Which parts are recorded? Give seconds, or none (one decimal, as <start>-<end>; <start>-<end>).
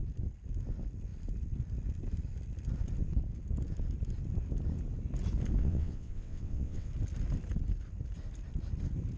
0.0-5.6; 6.9-9.2